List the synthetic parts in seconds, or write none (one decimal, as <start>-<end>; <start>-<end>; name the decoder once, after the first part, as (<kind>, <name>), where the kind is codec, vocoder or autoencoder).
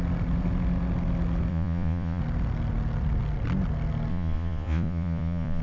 1.5-2.2 (vocoder, Vocos); 4.1-5.6